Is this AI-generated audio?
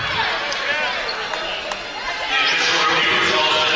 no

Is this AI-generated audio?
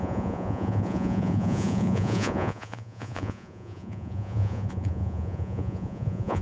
yes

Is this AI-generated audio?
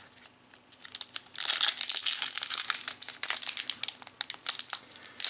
no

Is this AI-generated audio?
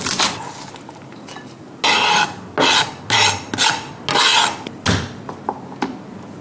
no